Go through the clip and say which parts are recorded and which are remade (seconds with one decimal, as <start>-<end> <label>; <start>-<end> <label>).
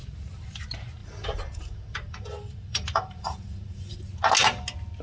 0.0-1.0 recorded; 1.0-4.0 remade; 4.0-5.0 recorded